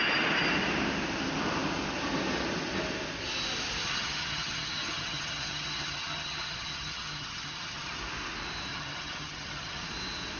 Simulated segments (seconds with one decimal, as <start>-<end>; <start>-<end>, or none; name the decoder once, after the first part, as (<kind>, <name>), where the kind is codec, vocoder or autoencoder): 3.8-8.0 (vocoder, HiFi-GAN); 8.7-9.8